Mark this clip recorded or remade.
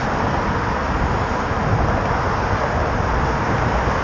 recorded